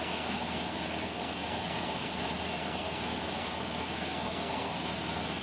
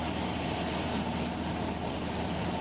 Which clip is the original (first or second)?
second